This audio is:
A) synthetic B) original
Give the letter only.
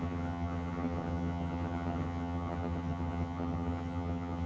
A